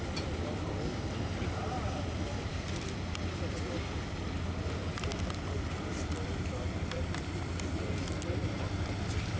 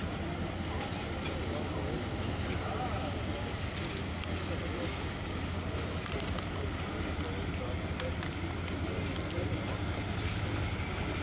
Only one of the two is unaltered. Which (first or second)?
second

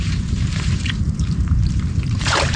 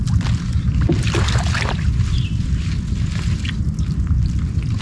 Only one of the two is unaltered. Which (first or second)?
second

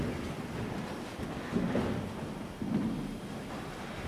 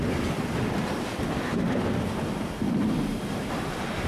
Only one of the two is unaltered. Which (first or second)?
first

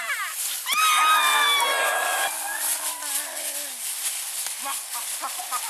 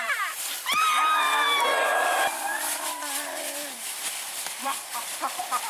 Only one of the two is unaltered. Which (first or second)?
first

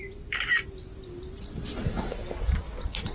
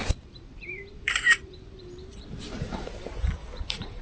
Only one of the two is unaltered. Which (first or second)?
first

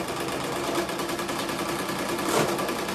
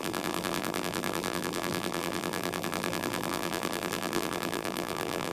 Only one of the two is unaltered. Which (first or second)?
first